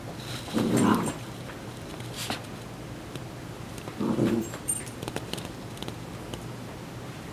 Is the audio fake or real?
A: fake